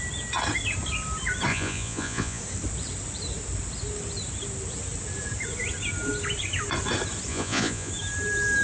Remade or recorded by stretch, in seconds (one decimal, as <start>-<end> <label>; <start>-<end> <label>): 0.0-1.5 recorded; 1.5-2.4 remade; 2.4-7.3 recorded; 7.3-7.9 remade; 7.9-8.6 recorded